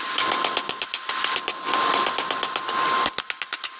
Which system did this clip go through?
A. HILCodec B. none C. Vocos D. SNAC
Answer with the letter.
B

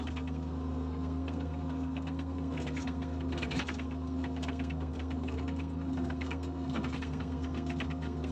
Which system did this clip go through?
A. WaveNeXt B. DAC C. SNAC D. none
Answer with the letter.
C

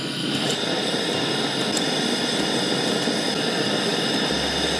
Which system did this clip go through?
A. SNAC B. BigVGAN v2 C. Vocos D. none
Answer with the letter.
D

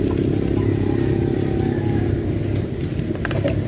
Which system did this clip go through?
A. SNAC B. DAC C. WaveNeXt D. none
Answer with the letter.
D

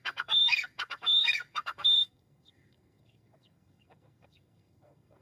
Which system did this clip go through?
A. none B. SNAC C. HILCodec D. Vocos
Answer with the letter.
B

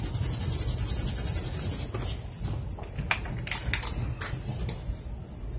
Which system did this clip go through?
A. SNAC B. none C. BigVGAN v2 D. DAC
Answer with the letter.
B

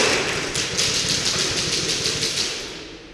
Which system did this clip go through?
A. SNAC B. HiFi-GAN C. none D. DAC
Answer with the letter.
C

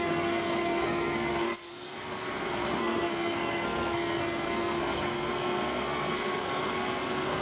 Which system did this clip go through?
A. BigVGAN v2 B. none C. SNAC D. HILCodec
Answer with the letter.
C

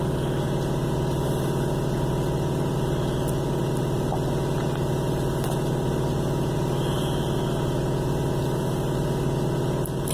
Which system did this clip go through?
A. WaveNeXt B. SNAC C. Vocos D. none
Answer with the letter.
D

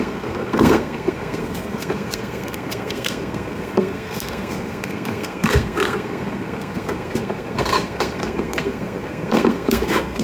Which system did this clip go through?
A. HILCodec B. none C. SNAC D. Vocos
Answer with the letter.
C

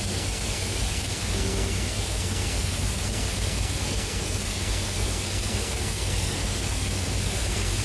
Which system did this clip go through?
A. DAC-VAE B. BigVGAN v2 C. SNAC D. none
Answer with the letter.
C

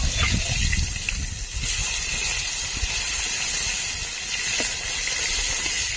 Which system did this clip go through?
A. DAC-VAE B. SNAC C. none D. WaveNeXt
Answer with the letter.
C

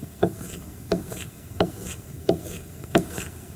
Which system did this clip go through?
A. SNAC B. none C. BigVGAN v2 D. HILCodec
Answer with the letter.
A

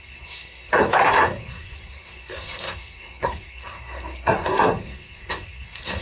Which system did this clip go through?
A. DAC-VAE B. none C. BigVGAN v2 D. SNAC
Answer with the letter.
D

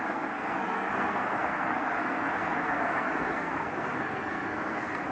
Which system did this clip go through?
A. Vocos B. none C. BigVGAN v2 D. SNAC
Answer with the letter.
D